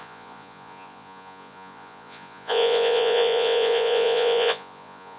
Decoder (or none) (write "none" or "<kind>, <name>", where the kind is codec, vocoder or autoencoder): vocoder, Vocos